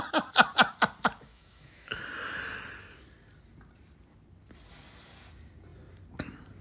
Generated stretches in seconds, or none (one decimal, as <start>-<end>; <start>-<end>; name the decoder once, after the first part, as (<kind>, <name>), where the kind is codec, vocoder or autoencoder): 1.3-2.0 (autoencoder, DAC-VAE)